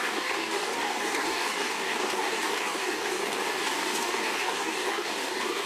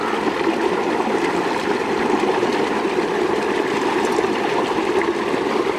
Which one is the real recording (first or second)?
second